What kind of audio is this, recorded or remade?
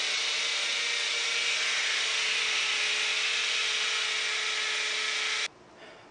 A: recorded